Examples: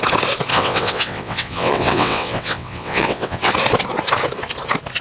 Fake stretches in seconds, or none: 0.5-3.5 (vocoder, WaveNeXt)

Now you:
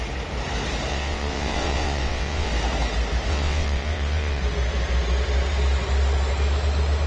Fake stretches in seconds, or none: 0.9-2.5 (vocoder, WaveNeXt); 3.3-4.4

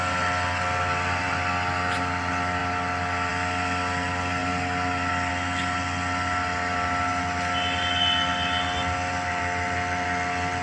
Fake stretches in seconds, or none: none

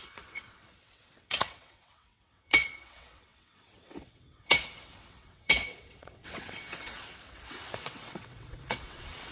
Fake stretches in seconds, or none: 0.0-9.3 (vocoder, WaveNeXt)

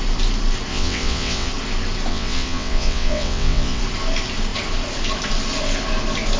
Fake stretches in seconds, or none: 0.7-1.5 (vocoder, WaveNeXt); 2.1-3.8